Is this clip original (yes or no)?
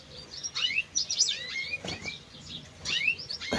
no